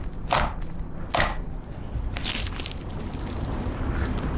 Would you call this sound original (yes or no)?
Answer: yes